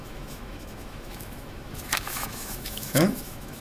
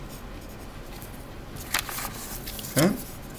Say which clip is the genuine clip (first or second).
second